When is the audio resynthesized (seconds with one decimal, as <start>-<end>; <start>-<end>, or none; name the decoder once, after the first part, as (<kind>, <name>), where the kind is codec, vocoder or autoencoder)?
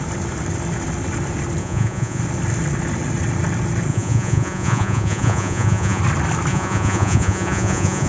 1.6-2.2 (vocoder, Vocos); 3.9-6.0; 6.5-8.1